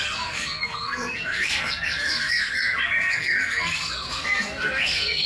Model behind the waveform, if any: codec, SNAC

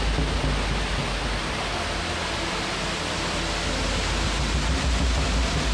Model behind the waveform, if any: none